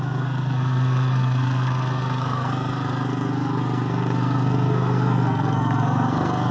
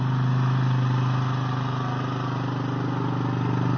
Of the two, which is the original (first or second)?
second